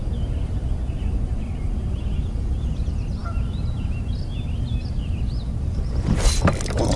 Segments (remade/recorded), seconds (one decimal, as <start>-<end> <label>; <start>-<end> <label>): 0.0-7.0 recorded

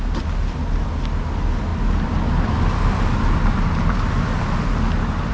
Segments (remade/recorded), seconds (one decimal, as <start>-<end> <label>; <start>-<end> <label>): 0.0-5.3 recorded